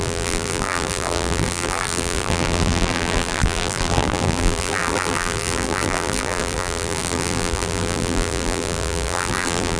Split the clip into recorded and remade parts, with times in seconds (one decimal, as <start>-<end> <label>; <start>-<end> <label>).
0.0-9.8 remade